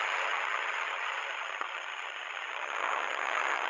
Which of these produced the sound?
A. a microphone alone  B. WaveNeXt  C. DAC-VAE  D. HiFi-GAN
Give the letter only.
D